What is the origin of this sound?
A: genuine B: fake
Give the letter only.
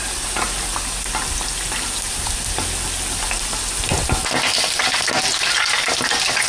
A